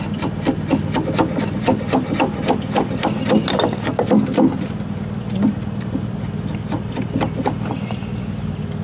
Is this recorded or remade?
recorded